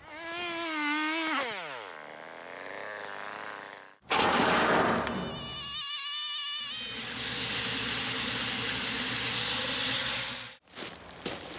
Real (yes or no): yes